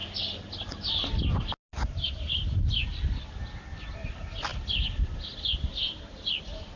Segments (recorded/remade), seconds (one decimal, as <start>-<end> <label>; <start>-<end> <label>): 0.0-6.8 recorded